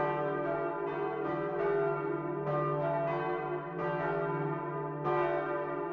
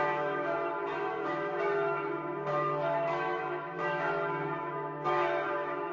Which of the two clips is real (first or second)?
first